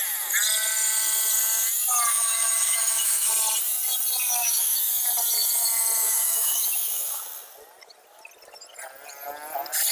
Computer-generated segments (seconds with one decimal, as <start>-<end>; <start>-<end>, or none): 2.1-3.3; 4.4-4.9; 6.0-7.2